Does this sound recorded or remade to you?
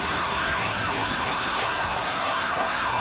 remade